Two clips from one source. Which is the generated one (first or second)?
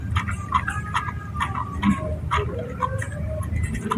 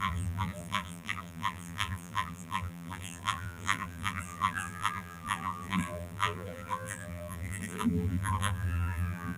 second